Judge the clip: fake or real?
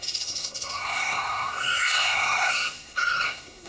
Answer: fake